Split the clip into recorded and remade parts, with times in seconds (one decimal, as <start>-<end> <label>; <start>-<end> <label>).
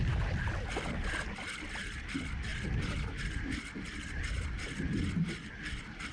0.0-6.1 recorded